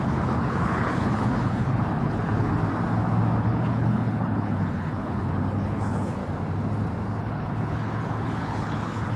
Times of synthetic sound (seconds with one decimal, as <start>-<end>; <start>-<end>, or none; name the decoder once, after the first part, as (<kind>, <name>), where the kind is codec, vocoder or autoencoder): 0.0-2.6 (codec, HILCodec); 3.4-6.2; 7.2-9.2